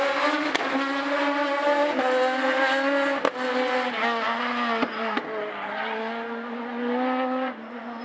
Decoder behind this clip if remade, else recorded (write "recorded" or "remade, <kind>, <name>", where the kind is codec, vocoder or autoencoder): recorded